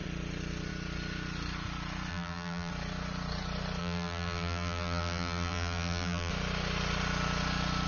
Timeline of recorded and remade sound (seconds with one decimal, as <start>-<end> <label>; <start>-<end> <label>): 0.0-2.1 recorded; 2.1-2.7 remade; 2.7-3.8 recorded; 3.8-6.3 remade; 6.3-7.9 recorded